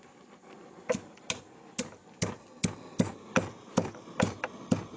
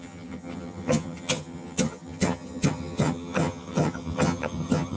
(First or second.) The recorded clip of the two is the first